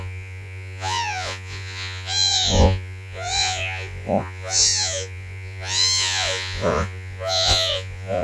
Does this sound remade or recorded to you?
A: remade